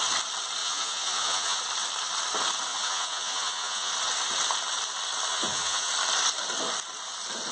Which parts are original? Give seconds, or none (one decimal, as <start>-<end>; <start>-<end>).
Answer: 0.0-0.6; 1.6-2.7; 3.9-5.3; 5.9-7.5